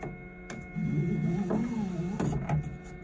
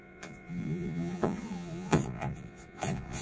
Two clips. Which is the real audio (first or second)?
first